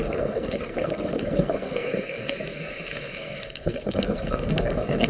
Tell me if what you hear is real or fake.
fake